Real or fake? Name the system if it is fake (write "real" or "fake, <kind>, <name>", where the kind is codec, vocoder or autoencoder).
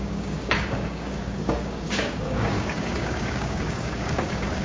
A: fake, codec, DAC